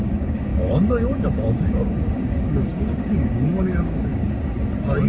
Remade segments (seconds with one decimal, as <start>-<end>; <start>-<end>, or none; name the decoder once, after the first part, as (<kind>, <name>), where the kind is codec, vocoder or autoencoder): 0.0-4.1 (codec, DAC)